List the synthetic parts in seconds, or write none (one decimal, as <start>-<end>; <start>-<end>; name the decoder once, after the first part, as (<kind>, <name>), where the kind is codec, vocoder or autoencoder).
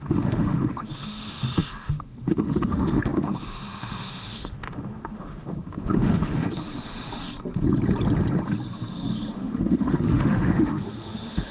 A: 0.0-7.1 (autoencoder, DAC-VAE); 9.3-11.5